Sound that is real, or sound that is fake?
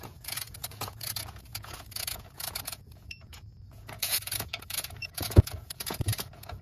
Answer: fake